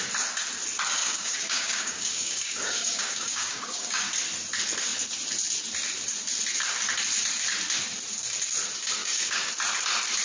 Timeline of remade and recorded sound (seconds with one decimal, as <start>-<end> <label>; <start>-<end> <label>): 0.0-1.0 recorded; 1.0-4.1 remade; 4.1-9.0 recorded; 9.0-9.5 remade; 9.5-10.2 recorded